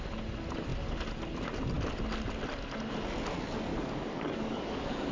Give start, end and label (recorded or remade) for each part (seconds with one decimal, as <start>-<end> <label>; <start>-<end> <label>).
0.0-3.7 recorded; 3.7-5.1 remade